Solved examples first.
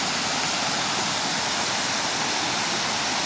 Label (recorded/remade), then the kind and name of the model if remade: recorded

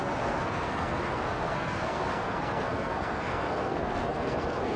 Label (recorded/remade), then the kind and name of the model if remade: remade, codec, SNAC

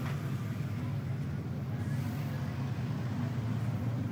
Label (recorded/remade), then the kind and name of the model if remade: recorded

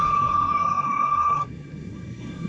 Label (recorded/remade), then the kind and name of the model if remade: remade, codec, SNAC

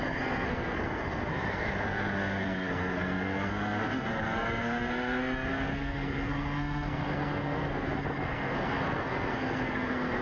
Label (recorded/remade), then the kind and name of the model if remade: remade, codec, SNAC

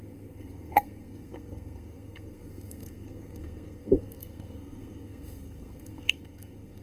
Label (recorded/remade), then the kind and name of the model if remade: remade, codec, SNAC